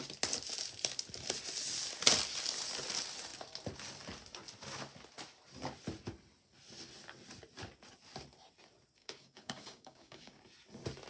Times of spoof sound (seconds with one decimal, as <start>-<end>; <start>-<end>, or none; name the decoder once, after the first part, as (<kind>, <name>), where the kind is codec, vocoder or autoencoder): 9.0-10.4 (codec, DAC)